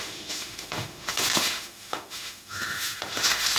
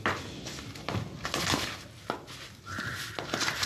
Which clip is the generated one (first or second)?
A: first